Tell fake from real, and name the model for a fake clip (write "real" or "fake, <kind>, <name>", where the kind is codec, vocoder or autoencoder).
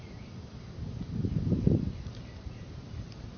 fake, vocoder, BigVGAN v2